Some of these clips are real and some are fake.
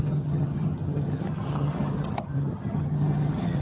fake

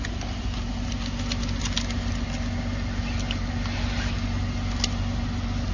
real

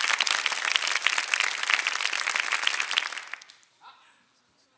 real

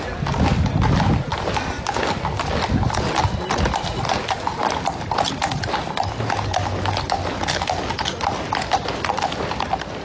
real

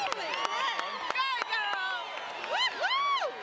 real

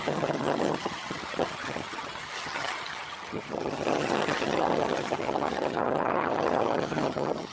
fake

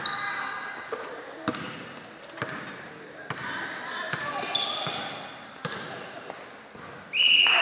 real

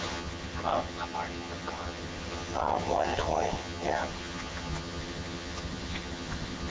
fake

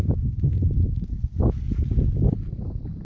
real